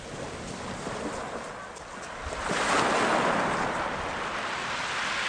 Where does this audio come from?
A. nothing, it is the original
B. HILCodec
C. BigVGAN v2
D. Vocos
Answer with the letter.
A